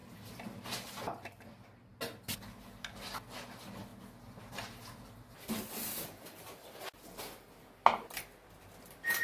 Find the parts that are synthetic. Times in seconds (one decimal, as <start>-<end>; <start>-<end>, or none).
none